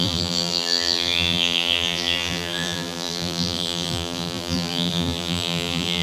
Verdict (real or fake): fake